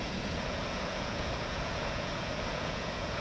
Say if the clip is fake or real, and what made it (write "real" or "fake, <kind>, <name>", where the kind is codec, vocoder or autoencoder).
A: fake, vocoder, Vocos